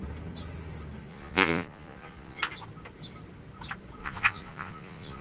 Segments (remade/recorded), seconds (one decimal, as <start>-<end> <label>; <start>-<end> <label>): 0.0-1.1 recorded; 1.1-2.4 remade; 2.4-4.0 recorded; 4.0-5.2 remade